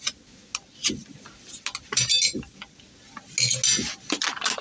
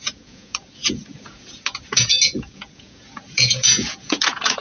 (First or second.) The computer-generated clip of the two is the second